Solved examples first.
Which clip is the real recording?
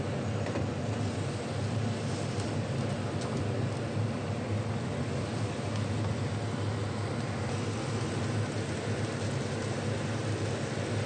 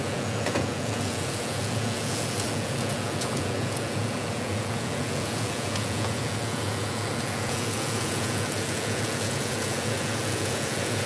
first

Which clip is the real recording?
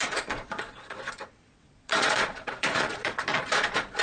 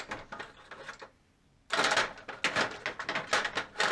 second